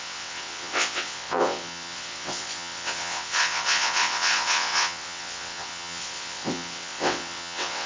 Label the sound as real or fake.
fake